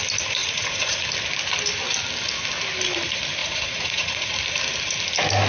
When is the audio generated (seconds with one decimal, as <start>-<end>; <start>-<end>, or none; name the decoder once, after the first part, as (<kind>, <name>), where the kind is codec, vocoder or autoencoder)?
0.4-1.0 (vocoder, Vocos); 3.4-4.3